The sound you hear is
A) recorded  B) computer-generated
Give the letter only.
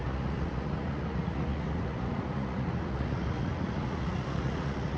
B